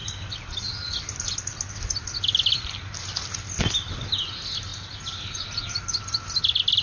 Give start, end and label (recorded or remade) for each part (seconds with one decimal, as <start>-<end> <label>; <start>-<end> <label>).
0.0-6.8 recorded